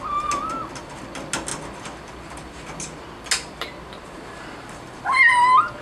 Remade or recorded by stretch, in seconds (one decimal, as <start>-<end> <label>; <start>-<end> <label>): 0.0-5.8 recorded